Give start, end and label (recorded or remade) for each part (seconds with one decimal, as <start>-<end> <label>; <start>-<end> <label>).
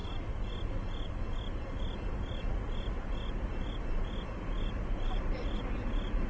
0.0-6.3 recorded